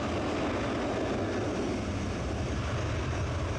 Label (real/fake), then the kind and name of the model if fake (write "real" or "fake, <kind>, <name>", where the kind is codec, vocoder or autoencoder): real